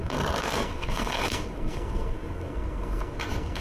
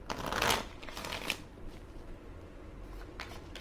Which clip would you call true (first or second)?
second